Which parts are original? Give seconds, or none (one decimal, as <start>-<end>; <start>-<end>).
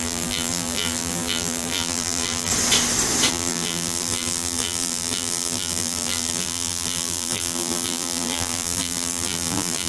2.5-3.3